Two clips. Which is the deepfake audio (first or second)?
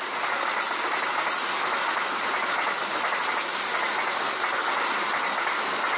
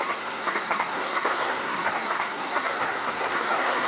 second